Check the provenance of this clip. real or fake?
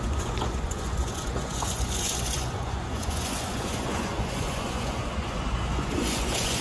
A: fake